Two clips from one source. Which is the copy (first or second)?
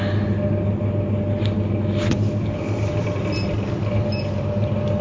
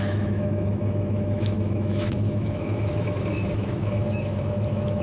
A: second